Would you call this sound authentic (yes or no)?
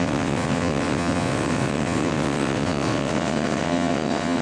no